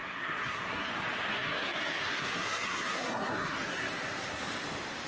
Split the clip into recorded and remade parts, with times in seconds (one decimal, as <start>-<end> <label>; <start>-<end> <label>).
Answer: 0.0-0.9 remade; 0.9-1.3 recorded; 1.3-4.4 remade; 4.4-5.1 recorded